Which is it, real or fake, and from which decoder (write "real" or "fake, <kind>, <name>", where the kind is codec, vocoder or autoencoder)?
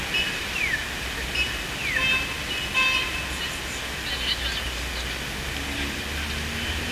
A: real